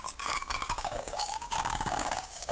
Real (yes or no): no